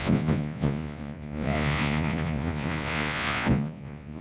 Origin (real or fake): fake